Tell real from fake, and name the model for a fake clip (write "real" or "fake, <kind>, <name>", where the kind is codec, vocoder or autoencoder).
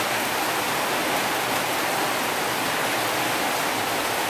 real